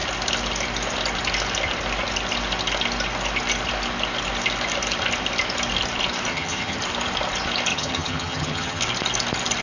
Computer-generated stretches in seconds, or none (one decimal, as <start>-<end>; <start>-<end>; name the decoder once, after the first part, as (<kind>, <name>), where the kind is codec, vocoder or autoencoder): 6.3-6.8 (vocoder, HiFi-GAN); 7.7-8.8